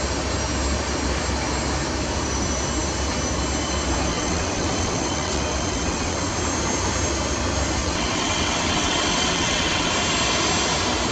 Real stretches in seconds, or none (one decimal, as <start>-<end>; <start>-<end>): 0.0-4.1; 6.3-7.8; 9.9-11.1